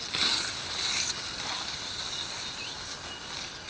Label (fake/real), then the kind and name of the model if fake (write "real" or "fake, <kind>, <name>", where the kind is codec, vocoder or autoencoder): real